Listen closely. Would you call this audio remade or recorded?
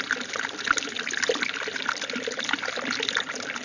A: recorded